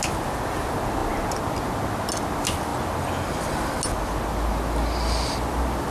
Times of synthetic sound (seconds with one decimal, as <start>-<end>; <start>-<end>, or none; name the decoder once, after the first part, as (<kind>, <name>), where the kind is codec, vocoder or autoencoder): none